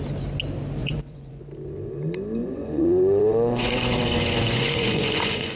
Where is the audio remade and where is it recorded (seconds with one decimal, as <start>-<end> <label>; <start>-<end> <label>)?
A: 0.0-0.8 recorded; 0.8-1.4 remade; 1.4-2.4 recorded; 2.4-5.6 remade